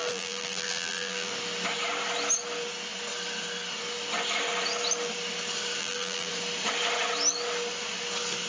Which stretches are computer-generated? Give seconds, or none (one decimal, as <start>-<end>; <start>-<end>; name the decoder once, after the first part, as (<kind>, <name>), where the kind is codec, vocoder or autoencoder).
0.0-1.3 (vocoder, BigVGAN v2); 5.8-6.3